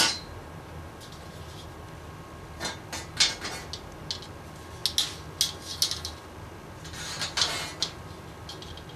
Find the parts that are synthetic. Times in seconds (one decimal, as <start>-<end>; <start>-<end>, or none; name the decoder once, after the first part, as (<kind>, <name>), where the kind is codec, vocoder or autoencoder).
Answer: none

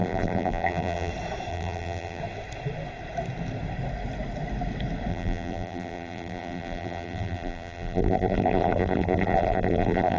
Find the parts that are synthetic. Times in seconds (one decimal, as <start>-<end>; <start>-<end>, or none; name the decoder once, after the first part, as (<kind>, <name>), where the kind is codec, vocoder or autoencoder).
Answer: 0.0-1.1 (vocoder, BigVGAN v2); 1.5-2.2; 5.1-10.2

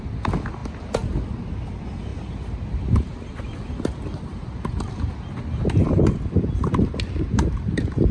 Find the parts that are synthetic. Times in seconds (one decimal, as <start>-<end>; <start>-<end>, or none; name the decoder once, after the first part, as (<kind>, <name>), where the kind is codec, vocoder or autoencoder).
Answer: none

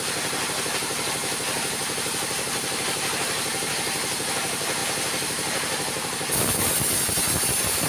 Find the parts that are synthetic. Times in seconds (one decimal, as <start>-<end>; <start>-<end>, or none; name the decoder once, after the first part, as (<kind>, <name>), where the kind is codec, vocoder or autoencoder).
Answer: 4.8-6.8 (vocoder, BigVGAN v2)

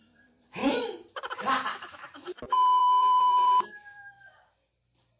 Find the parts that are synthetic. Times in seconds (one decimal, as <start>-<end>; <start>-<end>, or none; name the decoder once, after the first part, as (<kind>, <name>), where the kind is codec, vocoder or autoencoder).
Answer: 0.0-5.2 (vocoder, BigVGAN v2)